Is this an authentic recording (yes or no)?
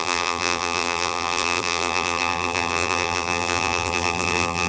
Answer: no